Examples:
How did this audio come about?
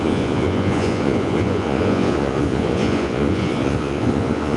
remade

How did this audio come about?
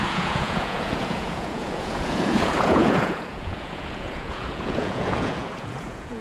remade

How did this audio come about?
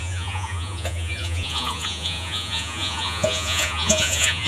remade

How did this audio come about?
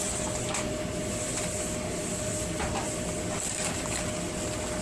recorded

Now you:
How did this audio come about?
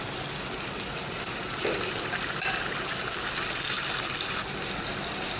recorded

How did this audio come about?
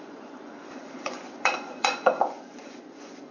remade